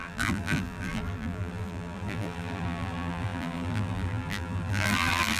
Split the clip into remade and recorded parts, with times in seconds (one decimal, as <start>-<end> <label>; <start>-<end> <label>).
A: 0.0-5.4 remade